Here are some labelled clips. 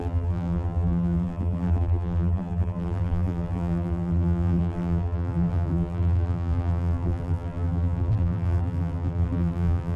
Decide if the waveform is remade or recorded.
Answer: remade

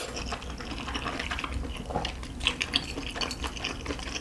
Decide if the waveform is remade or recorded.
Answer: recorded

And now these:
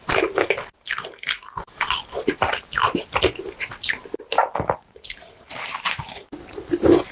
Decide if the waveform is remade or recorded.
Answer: recorded